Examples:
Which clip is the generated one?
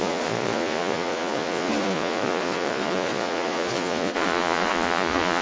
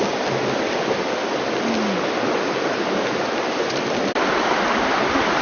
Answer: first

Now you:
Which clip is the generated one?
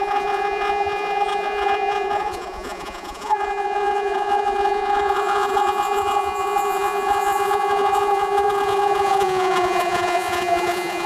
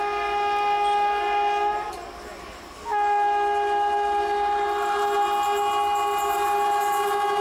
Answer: first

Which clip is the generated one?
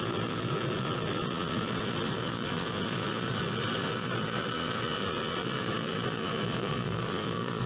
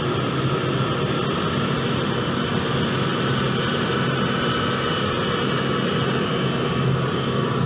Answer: first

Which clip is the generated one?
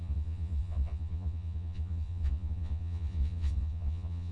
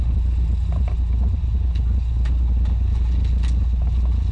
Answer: first